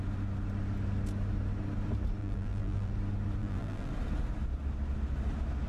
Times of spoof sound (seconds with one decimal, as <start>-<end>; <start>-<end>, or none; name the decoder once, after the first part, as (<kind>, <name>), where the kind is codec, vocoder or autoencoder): 2.2-2.9 (vocoder, BigVGAN v2); 3.4-3.9